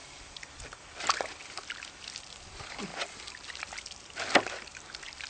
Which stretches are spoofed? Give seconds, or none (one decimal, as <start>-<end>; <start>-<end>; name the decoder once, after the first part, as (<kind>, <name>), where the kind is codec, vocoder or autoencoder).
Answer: none